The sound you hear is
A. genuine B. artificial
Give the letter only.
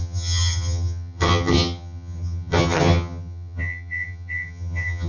B